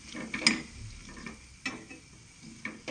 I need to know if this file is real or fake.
real